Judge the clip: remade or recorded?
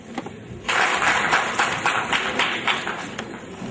remade